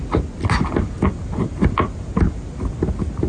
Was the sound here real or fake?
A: real